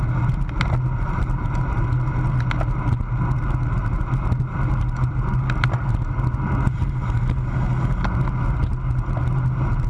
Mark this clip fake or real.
real